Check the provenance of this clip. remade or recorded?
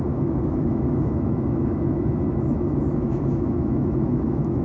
remade